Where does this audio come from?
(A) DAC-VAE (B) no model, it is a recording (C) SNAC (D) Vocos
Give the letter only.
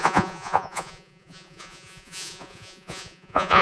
D